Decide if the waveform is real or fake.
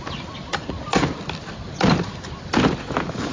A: real